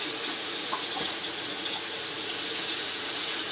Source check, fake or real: fake